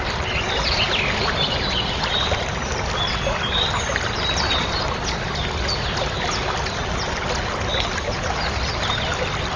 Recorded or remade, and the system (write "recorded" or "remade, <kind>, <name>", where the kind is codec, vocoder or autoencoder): recorded